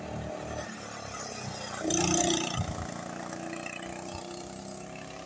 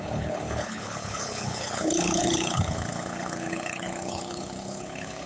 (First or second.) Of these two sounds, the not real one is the second